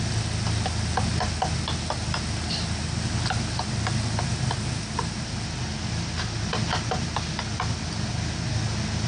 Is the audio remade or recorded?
recorded